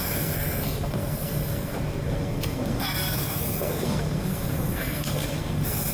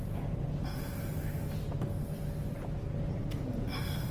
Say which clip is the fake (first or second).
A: first